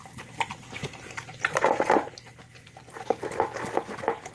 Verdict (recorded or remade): recorded